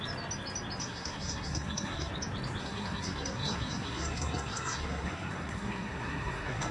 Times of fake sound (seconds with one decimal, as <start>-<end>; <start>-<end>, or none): 0.8-2.1; 2.6-6.7